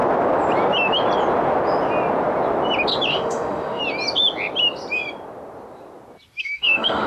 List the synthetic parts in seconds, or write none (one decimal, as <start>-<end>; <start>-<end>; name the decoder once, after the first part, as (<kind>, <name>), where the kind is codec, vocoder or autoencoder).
3.1-3.8 (autoencoder, DAC-VAE); 6.4-7.1